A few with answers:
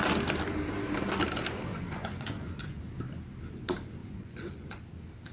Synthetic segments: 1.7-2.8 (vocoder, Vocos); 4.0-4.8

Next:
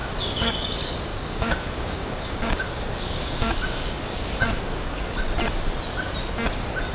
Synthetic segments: 0.0-0.5 (codec, DAC); 1.1-5.2

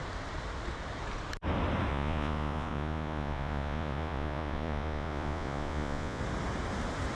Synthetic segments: 1.9-6.2 (vocoder, Vocos)

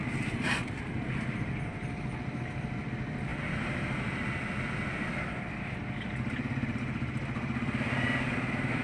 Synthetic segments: none

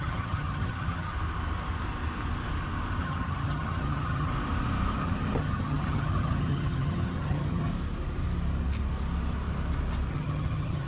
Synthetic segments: 0.0-1.1 (vocoder, HiFi-GAN); 3.0-4.3; 5.0-7.7; 10.1-10.9

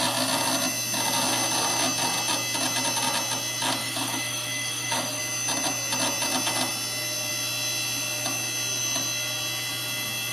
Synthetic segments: 3.8-5.2 (autoencoder, DAC-VAE)